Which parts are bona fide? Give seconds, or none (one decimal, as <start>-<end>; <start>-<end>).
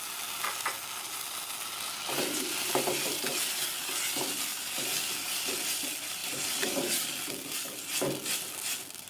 0.0-4.5; 5.1-6.2; 6.9-9.1